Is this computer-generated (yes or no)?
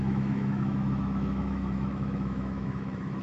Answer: yes